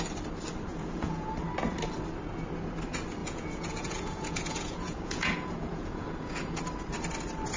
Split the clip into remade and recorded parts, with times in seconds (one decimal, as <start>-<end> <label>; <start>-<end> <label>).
0.0-0.7 recorded; 0.7-1.3 remade; 1.3-3.2 recorded; 3.2-6.6 remade; 6.6-7.6 recorded